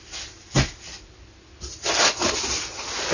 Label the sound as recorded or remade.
recorded